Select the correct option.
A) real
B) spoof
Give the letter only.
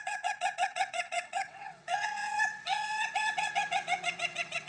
B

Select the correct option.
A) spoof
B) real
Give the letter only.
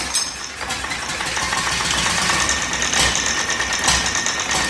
B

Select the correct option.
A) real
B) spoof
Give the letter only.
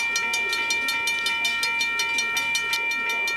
A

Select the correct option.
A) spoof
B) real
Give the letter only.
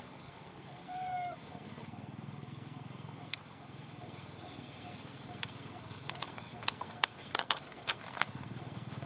A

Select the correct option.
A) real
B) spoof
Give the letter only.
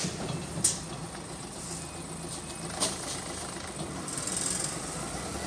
A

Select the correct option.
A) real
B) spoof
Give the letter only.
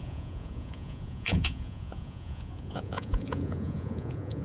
B